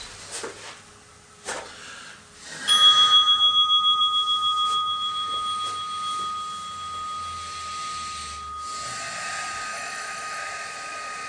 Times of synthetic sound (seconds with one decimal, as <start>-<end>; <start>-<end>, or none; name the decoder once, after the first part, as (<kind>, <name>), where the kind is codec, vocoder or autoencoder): 9.7-10.4 (autoencoder, DAC-VAE)